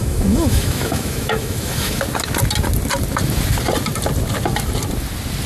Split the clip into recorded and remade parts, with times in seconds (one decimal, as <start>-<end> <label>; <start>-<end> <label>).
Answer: 0.0-2.0 remade; 2.0-5.5 recorded